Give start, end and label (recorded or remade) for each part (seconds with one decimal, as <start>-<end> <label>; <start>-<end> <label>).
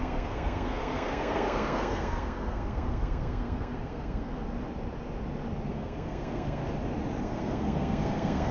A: 0.0-4.3 remade; 4.3-5.7 recorded; 5.7-6.6 remade; 6.6-7.2 recorded; 7.2-8.5 remade